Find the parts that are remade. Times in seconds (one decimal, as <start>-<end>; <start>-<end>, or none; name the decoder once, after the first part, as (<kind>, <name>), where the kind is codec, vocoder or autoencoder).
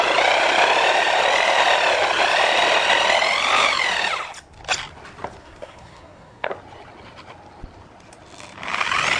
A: 5.4-6.5 (codec, SNAC)